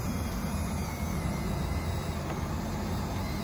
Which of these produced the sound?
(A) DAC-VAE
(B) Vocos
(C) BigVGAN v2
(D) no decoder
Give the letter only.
D